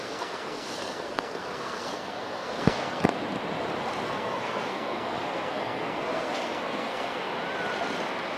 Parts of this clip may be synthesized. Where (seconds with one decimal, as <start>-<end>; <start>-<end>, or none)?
0.0-3.2; 4.0-7.3